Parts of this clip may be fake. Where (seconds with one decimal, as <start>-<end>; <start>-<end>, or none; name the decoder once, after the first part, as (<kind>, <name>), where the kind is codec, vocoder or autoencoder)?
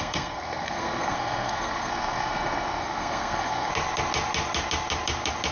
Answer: 0.0-3.7 (codec, SNAC)